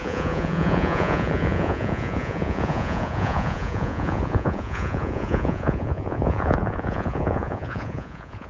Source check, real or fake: fake